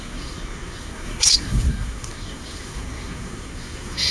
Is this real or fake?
fake